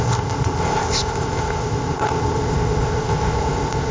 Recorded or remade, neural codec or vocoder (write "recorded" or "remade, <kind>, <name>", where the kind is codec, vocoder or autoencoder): remade, codec, ZipCodec